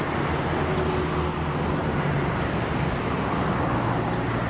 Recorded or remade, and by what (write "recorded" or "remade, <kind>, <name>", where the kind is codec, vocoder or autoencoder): recorded